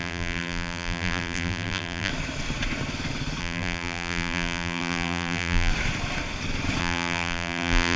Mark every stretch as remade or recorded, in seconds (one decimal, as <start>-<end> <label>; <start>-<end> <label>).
0.0-2.1 remade; 2.1-3.4 recorded; 3.4-5.7 remade; 5.7-6.8 recorded; 6.8-8.0 remade